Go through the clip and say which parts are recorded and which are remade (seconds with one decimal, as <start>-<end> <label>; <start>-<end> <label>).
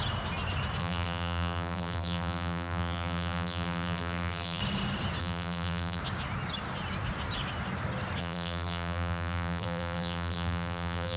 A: 0.0-0.8 recorded; 0.8-4.6 remade; 4.6-5.2 recorded; 5.2-6.0 remade; 6.0-8.2 recorded; 8.2-11.2 remade